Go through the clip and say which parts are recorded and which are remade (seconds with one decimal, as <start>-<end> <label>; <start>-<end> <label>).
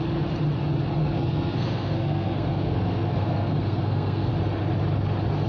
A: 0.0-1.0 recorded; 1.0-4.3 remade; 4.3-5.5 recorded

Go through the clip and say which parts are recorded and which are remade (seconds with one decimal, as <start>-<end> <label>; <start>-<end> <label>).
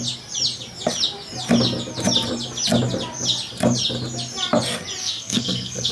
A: 0.0-5.0 recorded; 5.0-5.9 remade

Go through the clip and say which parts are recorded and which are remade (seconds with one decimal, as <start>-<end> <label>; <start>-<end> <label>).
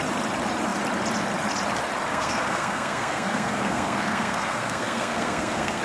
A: 0.0-2.1 recorded; 2.1-5.8 remade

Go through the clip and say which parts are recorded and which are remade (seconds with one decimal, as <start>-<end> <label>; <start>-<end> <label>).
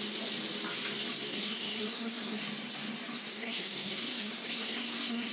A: 0.0-1.3 recorded; 1.3-2.4 remade; 2.4-3.3 recorded; 3.3-5.3 remade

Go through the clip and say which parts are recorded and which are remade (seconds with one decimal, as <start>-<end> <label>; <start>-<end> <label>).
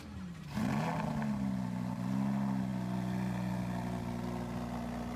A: 0.0-5.2 recorded